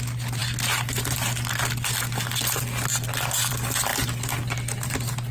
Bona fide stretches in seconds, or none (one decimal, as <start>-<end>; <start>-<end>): 0.0-5.3